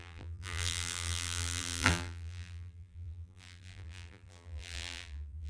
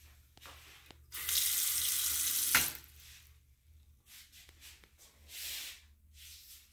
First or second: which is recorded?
second